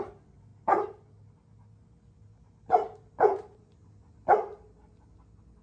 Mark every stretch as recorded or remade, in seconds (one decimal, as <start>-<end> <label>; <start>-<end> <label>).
0.0-5.6 recorded